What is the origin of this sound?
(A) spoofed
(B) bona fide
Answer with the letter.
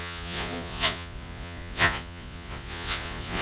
A